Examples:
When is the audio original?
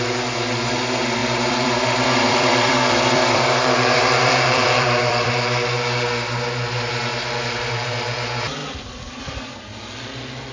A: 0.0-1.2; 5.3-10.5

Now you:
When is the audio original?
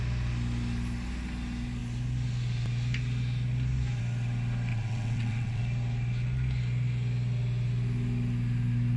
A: 0.0-4.7; 5.6-9.0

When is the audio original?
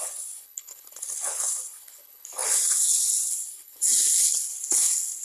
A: none